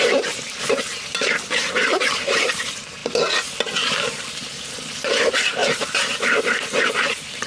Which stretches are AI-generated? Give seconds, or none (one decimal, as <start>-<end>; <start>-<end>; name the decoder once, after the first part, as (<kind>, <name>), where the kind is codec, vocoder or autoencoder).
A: 0.0-3.0 (vocoder, BigVGAN v2); 3.9-7.5